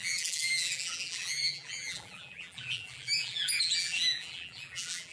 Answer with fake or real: fake